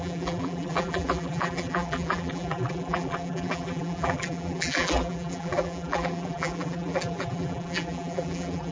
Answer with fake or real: fake